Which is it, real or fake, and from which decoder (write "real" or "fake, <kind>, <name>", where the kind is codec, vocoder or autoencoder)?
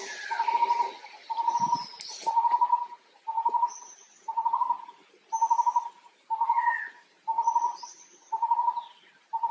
real